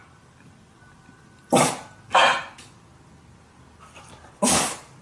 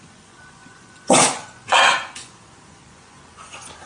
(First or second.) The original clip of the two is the first